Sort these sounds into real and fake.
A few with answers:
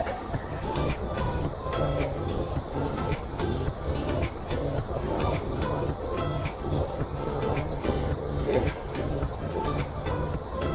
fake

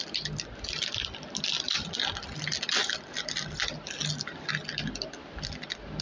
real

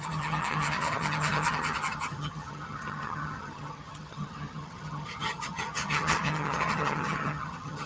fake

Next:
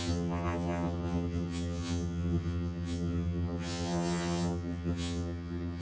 fake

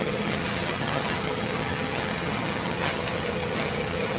fake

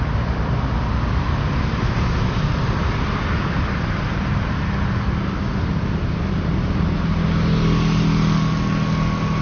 real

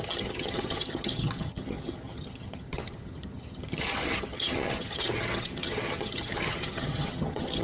fake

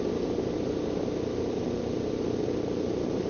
real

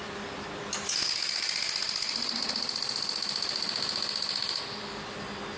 real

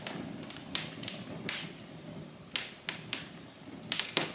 real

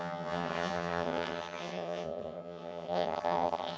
fake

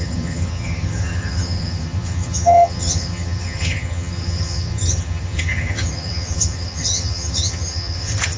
fake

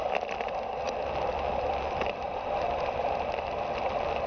real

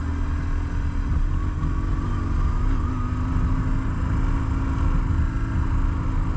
real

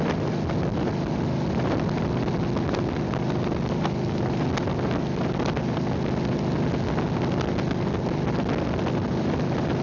real